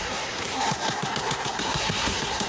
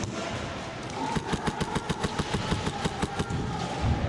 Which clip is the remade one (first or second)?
first